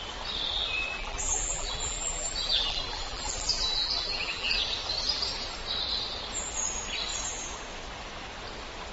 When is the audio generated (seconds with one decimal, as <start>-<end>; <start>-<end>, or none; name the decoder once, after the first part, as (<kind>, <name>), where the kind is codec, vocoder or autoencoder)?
0.9-4.6 (vocoder, BigVGAN v2)

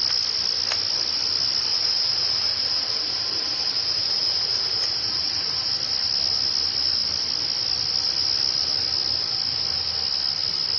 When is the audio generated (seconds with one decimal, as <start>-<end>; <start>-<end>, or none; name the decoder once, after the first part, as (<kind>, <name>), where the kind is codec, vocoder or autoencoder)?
1.7-5.7 (vocoder, BigVGAN v2)